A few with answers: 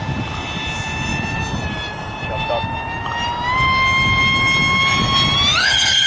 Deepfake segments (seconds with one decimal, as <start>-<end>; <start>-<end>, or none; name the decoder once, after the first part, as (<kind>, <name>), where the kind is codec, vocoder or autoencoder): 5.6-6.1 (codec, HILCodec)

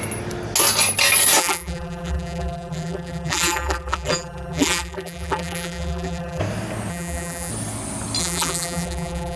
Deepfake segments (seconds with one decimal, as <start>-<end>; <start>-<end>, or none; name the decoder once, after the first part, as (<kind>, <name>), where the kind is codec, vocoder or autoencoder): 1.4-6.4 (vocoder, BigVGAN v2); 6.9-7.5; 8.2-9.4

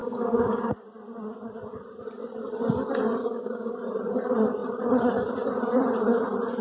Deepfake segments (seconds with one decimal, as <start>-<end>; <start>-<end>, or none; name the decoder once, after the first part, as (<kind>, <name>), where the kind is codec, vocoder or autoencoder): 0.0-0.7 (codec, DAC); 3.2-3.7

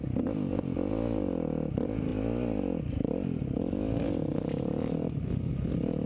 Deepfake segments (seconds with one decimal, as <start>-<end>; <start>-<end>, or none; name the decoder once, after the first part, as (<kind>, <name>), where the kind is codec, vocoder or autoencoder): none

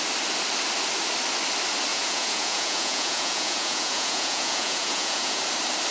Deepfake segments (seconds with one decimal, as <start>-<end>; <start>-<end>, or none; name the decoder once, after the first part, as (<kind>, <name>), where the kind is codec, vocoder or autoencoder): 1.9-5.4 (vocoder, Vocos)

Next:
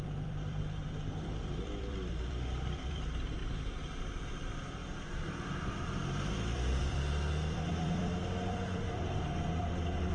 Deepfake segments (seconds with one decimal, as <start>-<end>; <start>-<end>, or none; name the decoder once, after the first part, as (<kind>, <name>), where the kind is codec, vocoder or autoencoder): 0.0-3.4 (vocoder, BigVGAN v2); 4.0-10.1

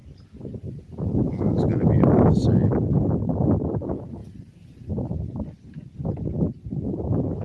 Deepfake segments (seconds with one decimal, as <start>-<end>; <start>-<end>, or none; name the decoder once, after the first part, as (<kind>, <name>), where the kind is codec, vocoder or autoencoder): none

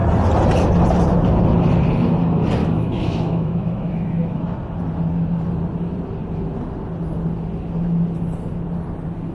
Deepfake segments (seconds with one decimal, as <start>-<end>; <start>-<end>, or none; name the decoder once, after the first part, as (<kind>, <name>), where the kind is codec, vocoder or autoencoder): 2.6-4.4 (autoencoder, DAC-VAE)